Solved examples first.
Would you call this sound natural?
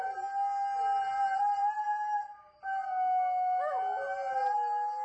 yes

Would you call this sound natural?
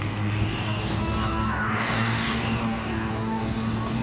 no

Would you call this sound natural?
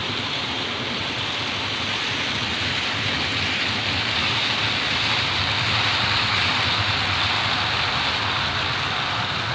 yes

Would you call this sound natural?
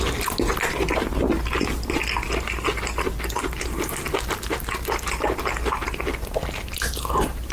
yes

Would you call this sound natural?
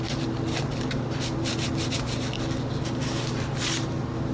yes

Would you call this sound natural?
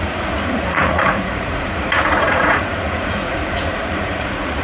no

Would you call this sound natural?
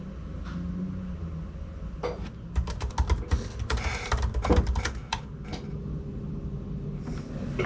yes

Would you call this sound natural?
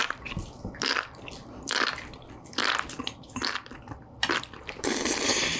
no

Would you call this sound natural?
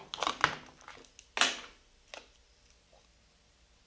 yes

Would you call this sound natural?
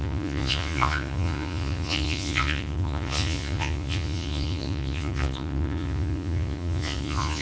no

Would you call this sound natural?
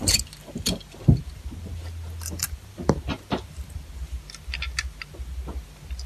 yes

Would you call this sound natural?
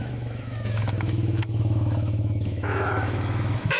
no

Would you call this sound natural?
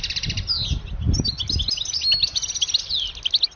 yes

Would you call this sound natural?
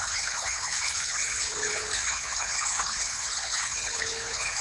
no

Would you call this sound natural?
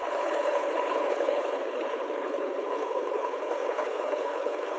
no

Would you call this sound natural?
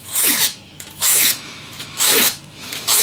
no